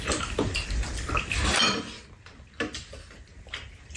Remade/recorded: recorded